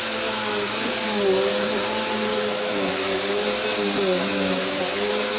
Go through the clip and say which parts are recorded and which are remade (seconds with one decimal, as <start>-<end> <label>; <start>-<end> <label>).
0.0-2.3 recorded; 2.3-2.9 remade; 2.9-4.2 recorded; 4.2-4.8 remade; 4.8-5.4 recorded